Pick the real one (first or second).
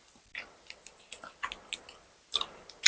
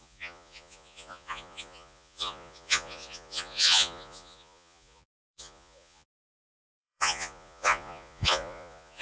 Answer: first